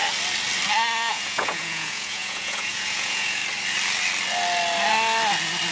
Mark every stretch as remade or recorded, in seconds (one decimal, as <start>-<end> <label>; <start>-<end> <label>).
0.0-1.1 recorded; 1.1-3.4 remade; 3.4-5.7 recorded